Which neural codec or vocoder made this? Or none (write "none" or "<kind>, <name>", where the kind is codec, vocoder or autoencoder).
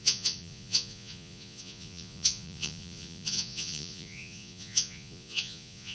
vocoder, Vocos